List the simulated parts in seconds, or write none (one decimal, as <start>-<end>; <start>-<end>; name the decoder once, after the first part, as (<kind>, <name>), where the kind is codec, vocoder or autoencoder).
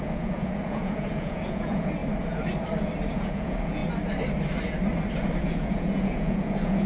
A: 0.0-2.0 (vocoder, Vocos); 3.1-3.8; 5.4-6.9